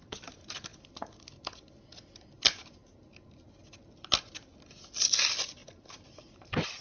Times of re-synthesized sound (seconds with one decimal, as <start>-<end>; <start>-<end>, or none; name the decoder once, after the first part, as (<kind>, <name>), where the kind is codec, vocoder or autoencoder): none